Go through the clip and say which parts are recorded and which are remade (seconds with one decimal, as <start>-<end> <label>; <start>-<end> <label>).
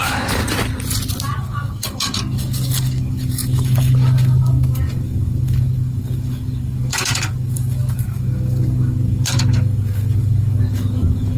0.0-0.4 remade; 0.4-1.4 recorded; 1.4-11.4 remade